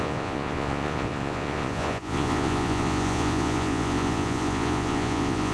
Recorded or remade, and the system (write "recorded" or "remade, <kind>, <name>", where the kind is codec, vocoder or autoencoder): remade, vocoder, Vocos